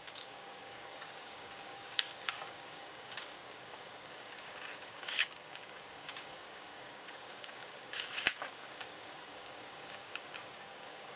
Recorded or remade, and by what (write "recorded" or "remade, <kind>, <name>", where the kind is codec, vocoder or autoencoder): remade, codec, DAC